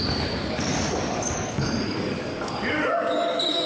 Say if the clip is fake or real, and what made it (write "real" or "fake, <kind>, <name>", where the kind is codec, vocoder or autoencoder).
fake, codec, DAC